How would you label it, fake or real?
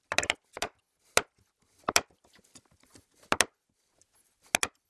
real